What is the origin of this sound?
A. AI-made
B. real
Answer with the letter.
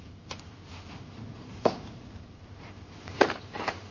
A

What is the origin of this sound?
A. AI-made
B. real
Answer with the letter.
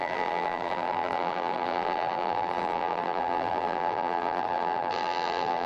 A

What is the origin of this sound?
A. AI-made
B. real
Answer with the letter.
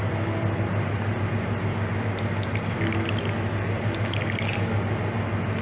B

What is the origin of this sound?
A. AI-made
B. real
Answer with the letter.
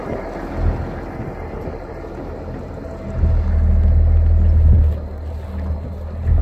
B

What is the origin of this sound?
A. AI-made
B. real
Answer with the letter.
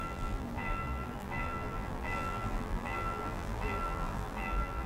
A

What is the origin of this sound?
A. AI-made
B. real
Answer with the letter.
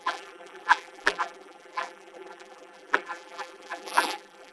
A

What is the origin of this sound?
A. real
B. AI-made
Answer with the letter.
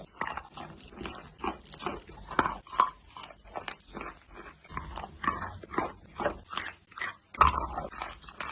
A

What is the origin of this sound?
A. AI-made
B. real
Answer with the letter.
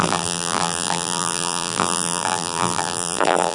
A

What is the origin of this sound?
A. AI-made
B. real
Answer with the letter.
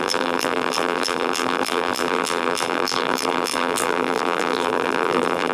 A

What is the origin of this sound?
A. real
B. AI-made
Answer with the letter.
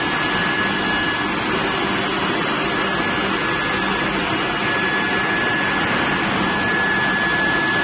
A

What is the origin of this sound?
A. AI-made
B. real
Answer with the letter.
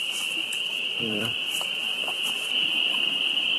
A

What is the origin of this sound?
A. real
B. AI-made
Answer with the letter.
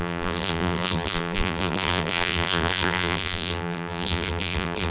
B